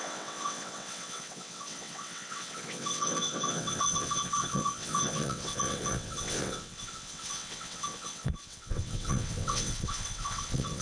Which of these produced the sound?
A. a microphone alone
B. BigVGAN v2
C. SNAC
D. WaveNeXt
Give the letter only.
D